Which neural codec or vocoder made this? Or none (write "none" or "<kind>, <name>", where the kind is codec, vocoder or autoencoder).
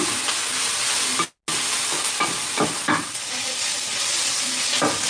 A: none